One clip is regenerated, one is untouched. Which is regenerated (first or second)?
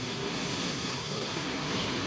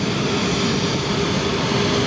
first